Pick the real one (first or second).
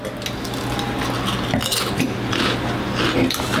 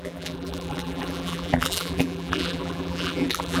first